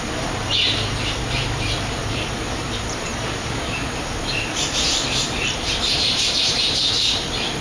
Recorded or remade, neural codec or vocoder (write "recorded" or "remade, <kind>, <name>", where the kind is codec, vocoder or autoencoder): remade, vocoder, BigVGAN v2